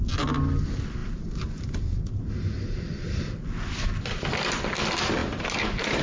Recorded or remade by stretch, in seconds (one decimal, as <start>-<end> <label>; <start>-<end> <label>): 0.0-1.0 recorded; 1.0-2.2 remade; 2.2-6.0 recorded